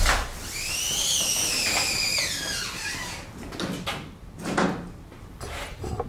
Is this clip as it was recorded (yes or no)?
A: yes